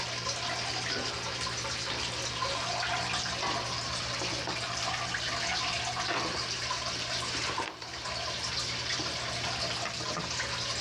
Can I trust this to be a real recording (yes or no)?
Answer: no